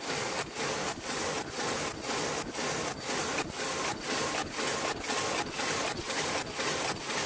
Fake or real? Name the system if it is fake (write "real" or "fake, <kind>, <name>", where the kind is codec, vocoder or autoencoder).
real